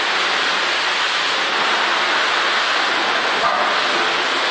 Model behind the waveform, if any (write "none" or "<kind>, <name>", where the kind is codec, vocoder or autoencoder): none